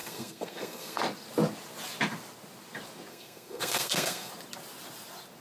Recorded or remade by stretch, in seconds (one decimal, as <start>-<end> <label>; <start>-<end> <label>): 0.0-1.0 remade; 1.0-3.1 recorded; 3.1-4.3 remade; 4.3-5.4 recorded